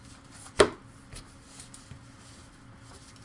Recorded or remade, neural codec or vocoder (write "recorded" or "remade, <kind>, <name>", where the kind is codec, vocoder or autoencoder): recorded